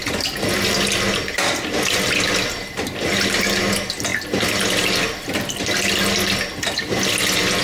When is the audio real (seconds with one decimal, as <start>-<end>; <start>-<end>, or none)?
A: 0.0-7.6

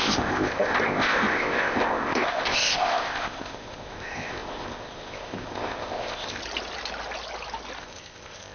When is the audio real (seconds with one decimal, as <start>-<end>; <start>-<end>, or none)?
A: 6.4-7.8

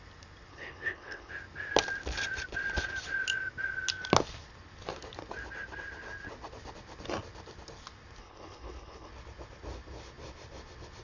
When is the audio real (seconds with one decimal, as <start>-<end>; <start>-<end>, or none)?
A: 0.0-0.5; 1.3-8.2; 9.1-11.0

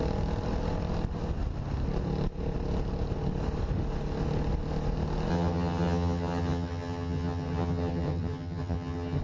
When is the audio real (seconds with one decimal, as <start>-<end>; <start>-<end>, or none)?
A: 0.0-5.3

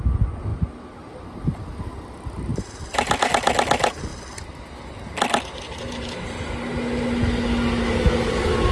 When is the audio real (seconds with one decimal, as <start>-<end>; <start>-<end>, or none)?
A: 0.0-2.5; 3.2-8.7

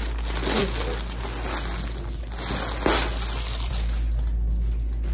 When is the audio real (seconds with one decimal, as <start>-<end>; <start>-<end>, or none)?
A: 0.0-5.1

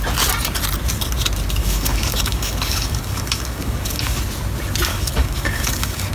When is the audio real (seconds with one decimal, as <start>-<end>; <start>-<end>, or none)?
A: 0.0-1.6; 4.2-4.9